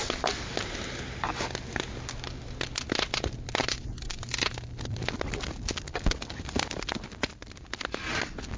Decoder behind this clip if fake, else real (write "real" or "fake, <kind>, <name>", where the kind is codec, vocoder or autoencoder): real